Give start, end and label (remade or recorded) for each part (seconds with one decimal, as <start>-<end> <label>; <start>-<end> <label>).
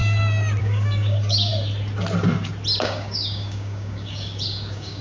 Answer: 0.0-0.6 recorded; 0.6-1.5 remade; 1.5-2.8 recorded; 2.8-5.0 remade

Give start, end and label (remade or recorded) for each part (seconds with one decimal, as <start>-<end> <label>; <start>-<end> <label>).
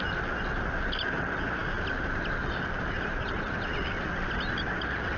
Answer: 0.0-5.2 recorded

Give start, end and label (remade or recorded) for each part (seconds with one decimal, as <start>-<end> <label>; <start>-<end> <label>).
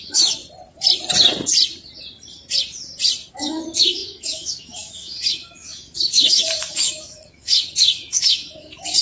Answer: 0.0-0.4 remade; 0.4-3.3 recorded; 3.3-9.0 remade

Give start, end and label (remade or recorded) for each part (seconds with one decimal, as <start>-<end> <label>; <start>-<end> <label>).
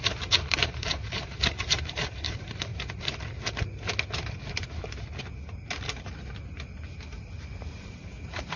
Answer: 0.0-2.7 remade; 2.7-7.8 recorded; 7.8-8.6 remade